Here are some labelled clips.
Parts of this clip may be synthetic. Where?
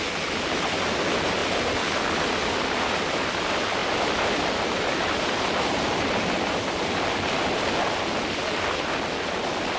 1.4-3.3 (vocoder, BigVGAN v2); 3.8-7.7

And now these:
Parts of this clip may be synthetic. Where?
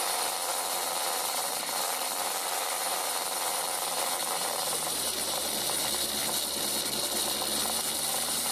0.0-5.2 (vocoder, BigVGAN v2); 8.1-8.5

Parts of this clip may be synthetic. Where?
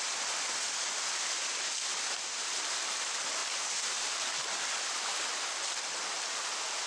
1.9-2.7 (vocoder, BigVGAN v2); 3.4-4.2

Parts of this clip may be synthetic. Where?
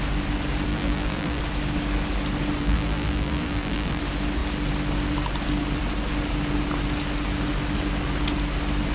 0.7-1.4 (vocoder, BigVGAN v2); 2.6-4.0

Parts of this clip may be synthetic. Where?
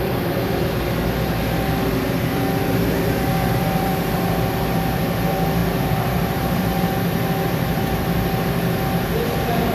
0.0-9.7 (vocoder, BigVGAN v2)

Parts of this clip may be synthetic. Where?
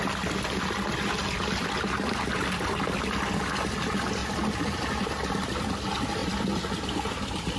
4.2-5.8 (vocoder, BigVGAN v2); 6.2-7.6